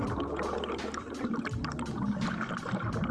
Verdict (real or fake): real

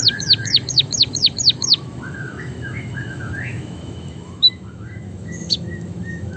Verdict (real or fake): fake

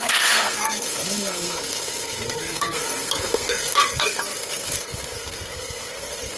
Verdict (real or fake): fake